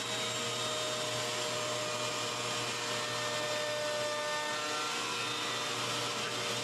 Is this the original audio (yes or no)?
yes